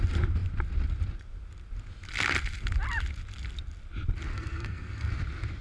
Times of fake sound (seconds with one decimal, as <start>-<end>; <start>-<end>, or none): 4.3-5.1